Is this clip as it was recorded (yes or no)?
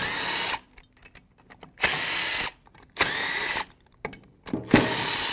yes